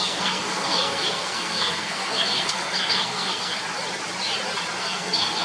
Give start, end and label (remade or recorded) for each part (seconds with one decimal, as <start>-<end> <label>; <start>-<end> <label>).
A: 0.0-3.6 remade; 3.6-4.8 recorded; 4.8-5.4 remade